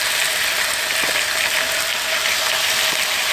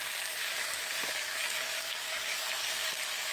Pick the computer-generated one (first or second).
second